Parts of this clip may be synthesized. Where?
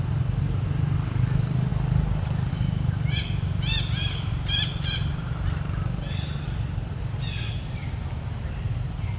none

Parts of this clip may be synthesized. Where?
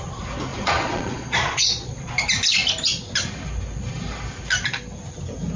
0.5-2.1 (vocoder, Vocos)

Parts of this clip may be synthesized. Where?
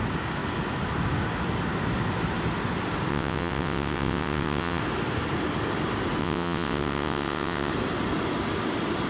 3.1-4.8 (vocoder, WaveNeXt); 6.2-7.7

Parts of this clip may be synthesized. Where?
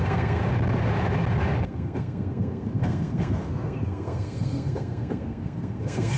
0.0-0.4 (codec, SNAC); 1.6-6.2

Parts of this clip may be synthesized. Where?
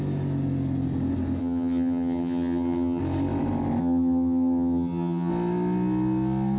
1.4-3.0 (vocoder, HiFi-GAN); 3.8-5.3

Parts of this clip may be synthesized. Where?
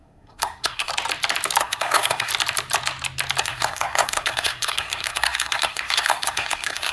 0.0-0.9 (codec, SNAC); 1.6-2.3; 3.4-6.9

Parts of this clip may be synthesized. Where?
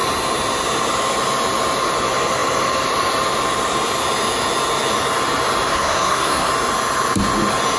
5.7-6.5 (codec, SNAC)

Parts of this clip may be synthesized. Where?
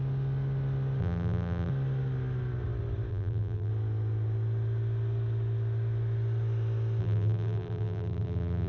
1.0-1.7 (vocoder, BigVGAN v2); 3.1-3.7; 7.0-8.7